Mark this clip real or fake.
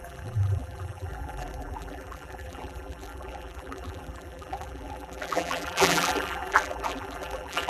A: fake